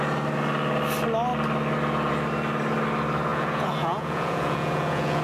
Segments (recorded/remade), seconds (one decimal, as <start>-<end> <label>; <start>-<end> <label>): 0.0-3.3 recorded; 3.3-5.2 remade